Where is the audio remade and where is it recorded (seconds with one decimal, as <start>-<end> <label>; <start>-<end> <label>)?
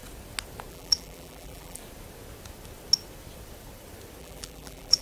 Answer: 0.0-0.7 recorded; 0.7-1.8 remade; 1.8-4.2 recorded; 4.2-5.0 remade